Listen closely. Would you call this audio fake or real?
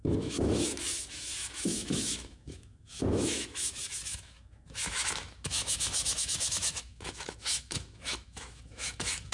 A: fake